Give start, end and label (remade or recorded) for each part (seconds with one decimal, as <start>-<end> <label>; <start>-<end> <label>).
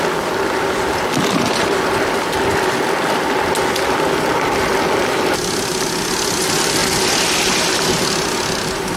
0.0-9.0 recorded